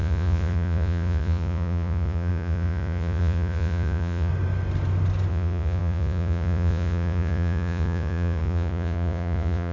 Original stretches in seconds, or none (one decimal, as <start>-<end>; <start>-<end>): 4.3-5.3